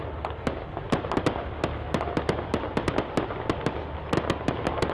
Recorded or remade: recorded